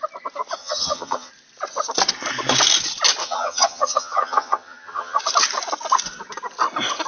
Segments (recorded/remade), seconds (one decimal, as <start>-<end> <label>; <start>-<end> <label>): 0.0-0.6 recorded; 0.6-1.3 remade; 1.3-3.2 recorded; 3.2-5.2 remade; 5.2-7.1 recorded